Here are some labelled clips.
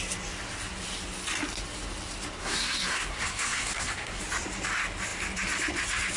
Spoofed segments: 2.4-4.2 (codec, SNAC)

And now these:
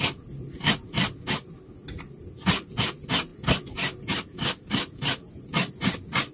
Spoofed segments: none